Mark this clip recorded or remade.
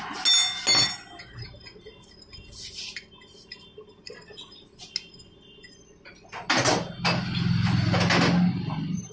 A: recorded